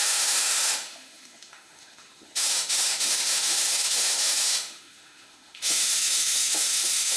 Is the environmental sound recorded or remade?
remade